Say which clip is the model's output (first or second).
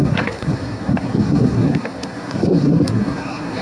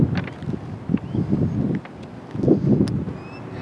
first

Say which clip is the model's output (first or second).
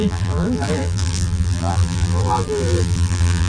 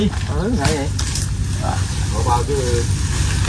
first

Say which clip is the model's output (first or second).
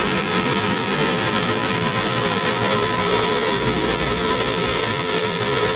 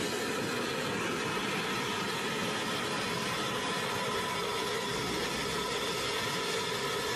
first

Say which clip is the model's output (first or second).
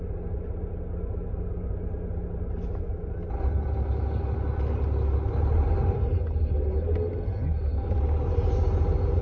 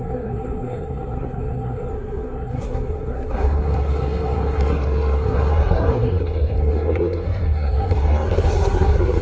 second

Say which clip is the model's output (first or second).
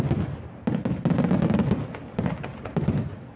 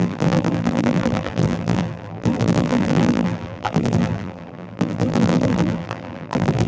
second